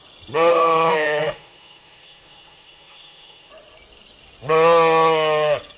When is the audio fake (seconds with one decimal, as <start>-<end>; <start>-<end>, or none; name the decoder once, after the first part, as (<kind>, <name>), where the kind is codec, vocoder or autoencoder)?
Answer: 0.5-3.5 (autoencoder, DAC-VAE)